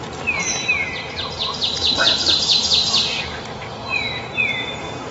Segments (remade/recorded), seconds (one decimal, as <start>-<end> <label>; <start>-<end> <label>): 0.0-3.8 recorded; 3.8-5.1 remade